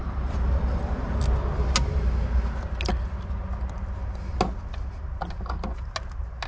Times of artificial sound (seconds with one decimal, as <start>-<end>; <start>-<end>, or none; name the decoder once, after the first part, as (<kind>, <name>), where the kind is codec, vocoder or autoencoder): 0.0-1.2 (vocoder, BigVGAN v2)